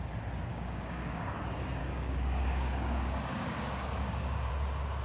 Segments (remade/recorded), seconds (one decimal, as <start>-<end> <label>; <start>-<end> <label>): 0.0-0.5 recorded; 0.5-1.4 remade; 1.4-1.8 recorded; 1.8-4.5 remade; 4.5-5.0 recorded